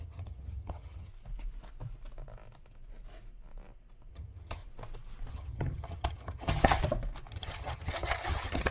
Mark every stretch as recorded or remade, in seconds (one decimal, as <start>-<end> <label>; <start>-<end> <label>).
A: 0.0-1.1 remade; 1.1-4.1 recorded; 4.1-4.6 remade; 4.6-5.3 recorded; 5.3-6.8 remade; 6.8-7.3 recorded; 7.3-8.7 remade